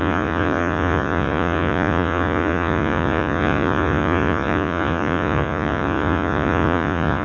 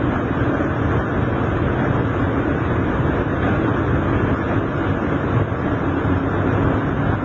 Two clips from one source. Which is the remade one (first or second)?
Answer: first